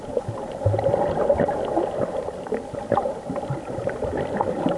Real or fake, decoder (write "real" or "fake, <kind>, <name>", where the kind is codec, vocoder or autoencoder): real